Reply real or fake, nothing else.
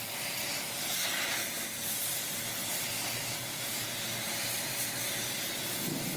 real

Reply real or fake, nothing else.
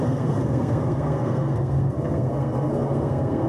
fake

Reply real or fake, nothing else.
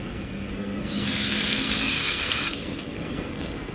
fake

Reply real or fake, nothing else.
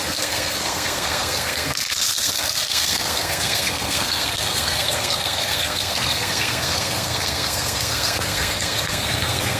fake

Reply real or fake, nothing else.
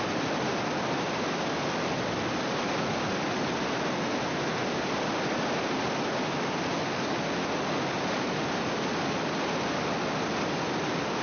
real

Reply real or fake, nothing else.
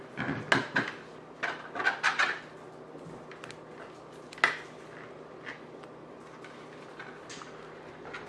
real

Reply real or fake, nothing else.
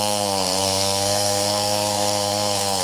fake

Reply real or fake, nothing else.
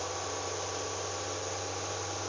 real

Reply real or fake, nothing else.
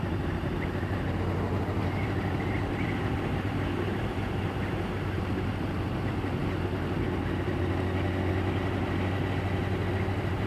real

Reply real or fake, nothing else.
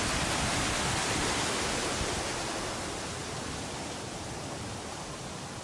real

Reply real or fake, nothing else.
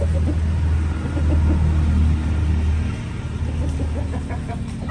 real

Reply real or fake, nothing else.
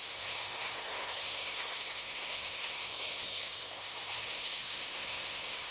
fake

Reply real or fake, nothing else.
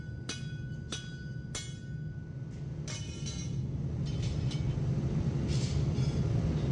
real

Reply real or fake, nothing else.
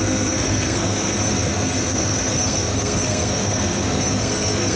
fake